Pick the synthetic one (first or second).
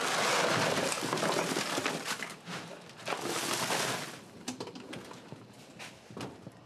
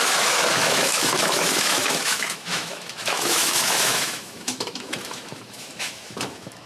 second